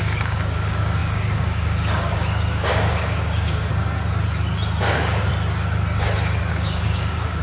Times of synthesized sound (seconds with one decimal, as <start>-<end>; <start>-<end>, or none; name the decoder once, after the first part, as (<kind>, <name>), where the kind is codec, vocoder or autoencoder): 0.0-3.7 (codec, DAC); 4.8-5.3; 6.5-7.4